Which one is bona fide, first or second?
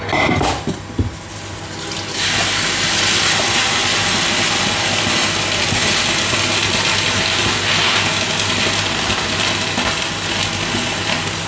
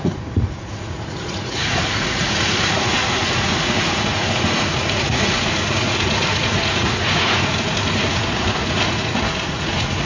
first